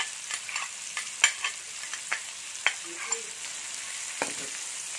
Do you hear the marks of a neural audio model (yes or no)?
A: no